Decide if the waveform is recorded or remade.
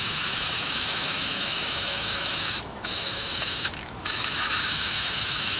remade